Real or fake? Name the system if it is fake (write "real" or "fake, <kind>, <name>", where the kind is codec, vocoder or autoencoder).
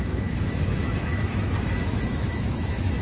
fake, autoencoder, DAC-VAE